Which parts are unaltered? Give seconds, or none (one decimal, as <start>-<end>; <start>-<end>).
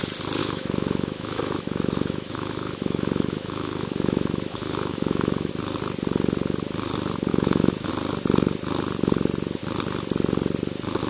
0.0-0.4; 5.5-7.3; 7.9-11.1